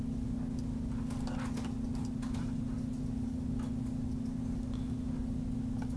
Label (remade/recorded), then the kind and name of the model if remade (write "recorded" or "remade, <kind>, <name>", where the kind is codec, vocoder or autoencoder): recorded